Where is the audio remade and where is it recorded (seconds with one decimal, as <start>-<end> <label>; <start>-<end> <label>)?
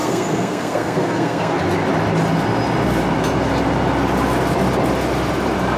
0.0-1.6 remade; 1.6-5.8 recorded